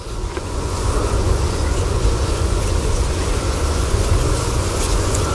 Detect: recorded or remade remade